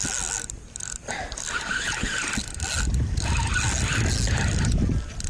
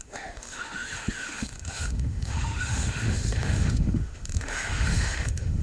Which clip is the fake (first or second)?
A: second